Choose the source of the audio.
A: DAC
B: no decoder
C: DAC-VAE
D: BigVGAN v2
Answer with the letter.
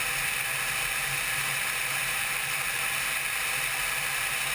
B